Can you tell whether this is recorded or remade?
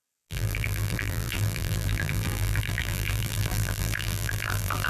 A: remade